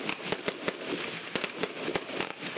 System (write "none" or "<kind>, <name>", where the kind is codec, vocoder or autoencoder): none